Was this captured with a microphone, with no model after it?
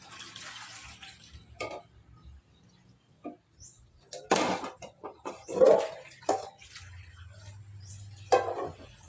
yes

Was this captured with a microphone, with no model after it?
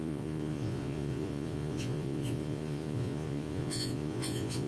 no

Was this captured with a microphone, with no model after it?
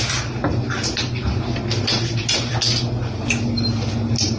yes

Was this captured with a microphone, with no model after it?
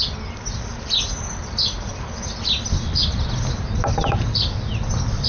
yes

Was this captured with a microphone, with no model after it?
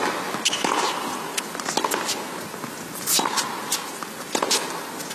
yes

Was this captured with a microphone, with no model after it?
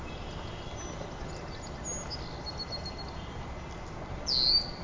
yes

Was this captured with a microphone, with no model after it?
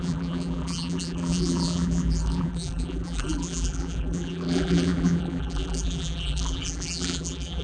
no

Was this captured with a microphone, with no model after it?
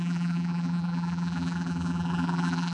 no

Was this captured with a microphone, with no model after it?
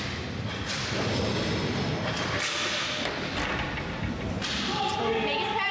yes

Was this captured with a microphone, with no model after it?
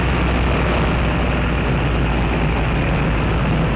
yes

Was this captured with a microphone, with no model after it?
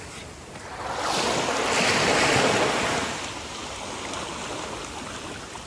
yes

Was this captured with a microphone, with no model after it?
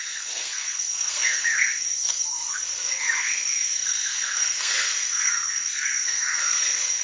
no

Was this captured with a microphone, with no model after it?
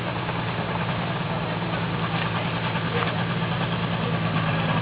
yes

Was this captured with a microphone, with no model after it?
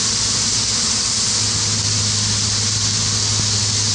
yes